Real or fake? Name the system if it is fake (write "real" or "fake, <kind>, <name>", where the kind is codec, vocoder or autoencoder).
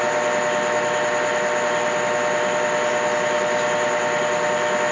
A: real